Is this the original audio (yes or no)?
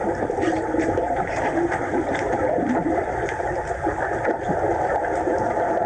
yes